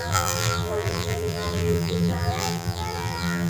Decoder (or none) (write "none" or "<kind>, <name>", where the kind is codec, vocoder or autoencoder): vocoder, BigVGAN v2